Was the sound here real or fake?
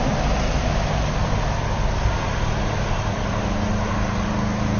real